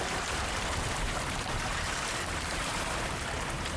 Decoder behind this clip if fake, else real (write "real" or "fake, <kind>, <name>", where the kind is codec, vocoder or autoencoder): fake, vocoder, BigVGAN v2